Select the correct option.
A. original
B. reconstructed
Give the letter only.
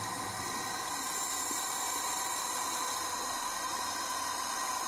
A